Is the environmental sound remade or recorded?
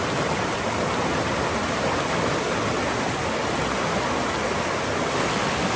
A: recorded